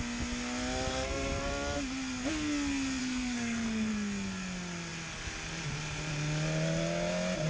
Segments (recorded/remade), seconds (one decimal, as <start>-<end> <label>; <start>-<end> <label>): 0.0-0.9 recorded; 0.9-1.5 remade; 1.5-3.0 recorded; 3.0-3.9 remade; 3.9-7.5 recorded